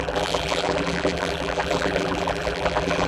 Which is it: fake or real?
fake